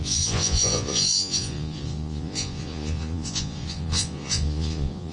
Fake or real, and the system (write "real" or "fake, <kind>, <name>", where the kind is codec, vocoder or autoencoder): fake, vocoder, Vocos